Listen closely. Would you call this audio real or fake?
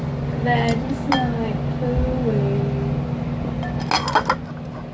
real